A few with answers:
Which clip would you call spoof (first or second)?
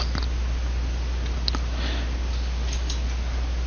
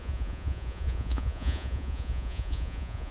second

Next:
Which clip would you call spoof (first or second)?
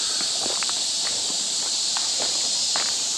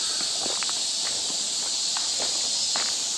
first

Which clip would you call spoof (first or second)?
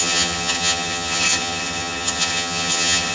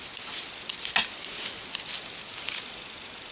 first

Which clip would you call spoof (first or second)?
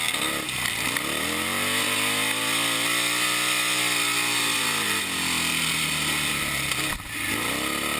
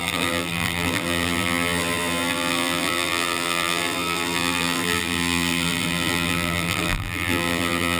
second